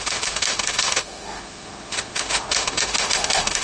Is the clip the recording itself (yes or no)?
no